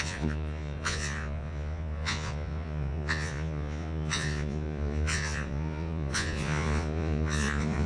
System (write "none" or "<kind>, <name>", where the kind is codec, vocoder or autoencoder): vocoder, Vocos